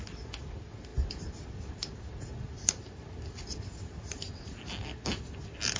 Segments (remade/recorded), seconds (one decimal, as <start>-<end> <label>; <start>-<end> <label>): 0.0-5.8 recorded